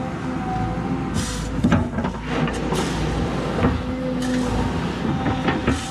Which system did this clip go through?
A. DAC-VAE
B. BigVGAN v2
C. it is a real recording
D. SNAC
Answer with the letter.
C